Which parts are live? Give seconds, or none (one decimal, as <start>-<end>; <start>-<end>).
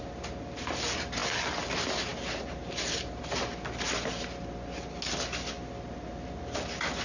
0.0-7.0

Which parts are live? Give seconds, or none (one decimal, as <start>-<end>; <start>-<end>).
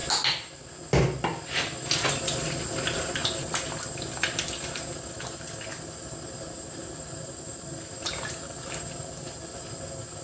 0.0-10.2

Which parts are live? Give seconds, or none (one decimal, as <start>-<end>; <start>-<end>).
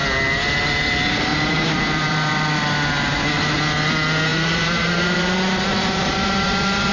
0.0-1.3; 2.5-4.3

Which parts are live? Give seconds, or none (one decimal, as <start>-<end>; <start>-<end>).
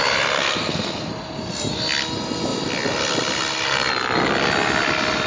0.0-0.4; 1.1-5.3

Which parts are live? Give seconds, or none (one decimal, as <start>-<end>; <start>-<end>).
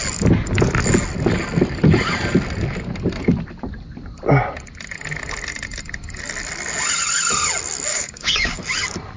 0.0-7.9; 8.6-9.2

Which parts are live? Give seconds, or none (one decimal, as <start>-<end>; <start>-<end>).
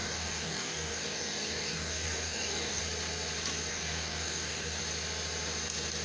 2.8-3.7; 4.8-6.0